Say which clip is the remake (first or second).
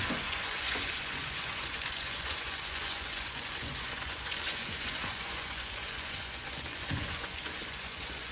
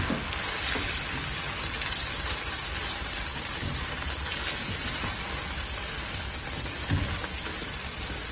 first